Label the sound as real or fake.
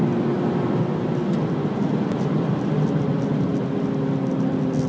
real